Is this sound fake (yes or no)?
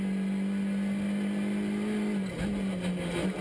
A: no